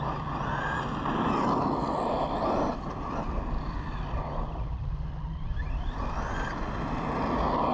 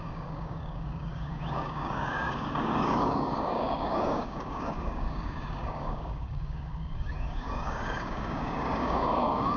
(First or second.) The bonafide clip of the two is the first